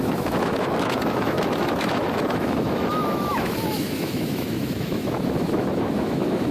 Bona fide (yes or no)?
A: no